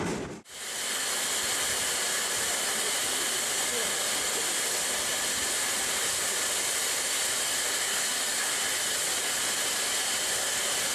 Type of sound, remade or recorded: recorded